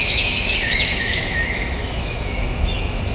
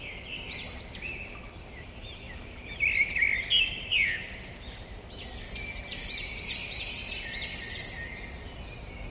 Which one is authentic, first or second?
second